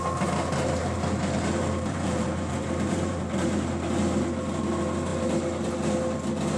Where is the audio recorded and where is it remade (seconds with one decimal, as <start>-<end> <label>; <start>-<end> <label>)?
0.0-0.8 recorded; 0.8-3.2 remade; 3.2-6.6 recorded